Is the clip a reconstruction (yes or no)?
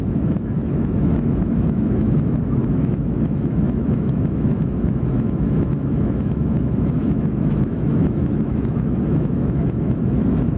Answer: yes